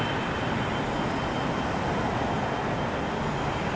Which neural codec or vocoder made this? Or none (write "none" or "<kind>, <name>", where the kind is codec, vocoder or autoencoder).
none